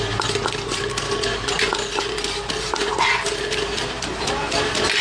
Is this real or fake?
real